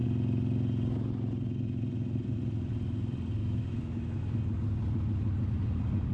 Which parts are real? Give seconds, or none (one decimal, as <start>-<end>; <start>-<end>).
0.0-3.4; 4.4-6.1